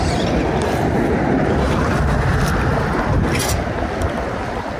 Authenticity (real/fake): real